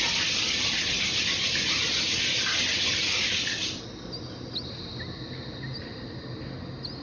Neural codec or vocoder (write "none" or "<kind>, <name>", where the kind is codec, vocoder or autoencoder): none